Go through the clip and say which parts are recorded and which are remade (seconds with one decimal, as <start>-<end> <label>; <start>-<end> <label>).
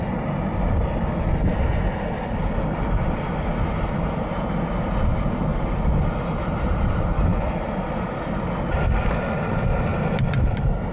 0.0-10.9 recorded